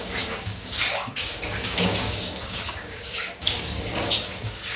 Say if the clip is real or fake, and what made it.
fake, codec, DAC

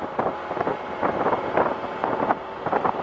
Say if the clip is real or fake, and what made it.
real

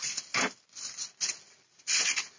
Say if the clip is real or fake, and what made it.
real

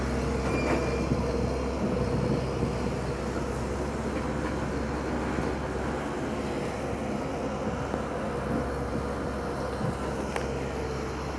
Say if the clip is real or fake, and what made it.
real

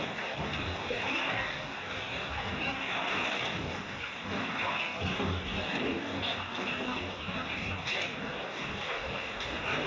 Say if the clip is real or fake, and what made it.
fake, codec, DAC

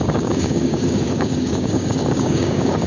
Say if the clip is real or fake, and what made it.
fake, codec, DAC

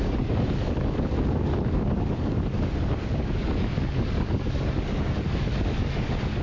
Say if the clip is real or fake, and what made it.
fake, codec, DAC